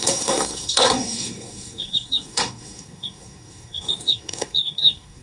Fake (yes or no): yes